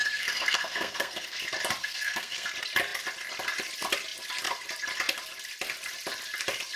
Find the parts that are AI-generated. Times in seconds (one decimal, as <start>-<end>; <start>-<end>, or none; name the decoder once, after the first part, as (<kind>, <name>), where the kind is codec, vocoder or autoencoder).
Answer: 0.0-1.4 (codec, SNAC); 1.8-2.5